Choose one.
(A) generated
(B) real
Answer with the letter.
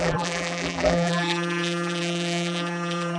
A